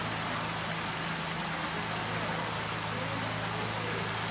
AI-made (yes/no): no